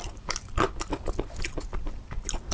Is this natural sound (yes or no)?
yes